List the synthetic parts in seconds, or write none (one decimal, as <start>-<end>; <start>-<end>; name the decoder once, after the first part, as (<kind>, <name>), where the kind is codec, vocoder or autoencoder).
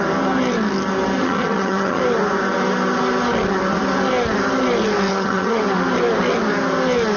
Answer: 1.2-2.0 (vocoder, HiFi-GAN); 5.1-5.6